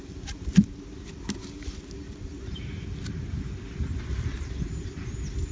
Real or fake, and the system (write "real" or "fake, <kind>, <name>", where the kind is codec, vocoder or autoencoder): real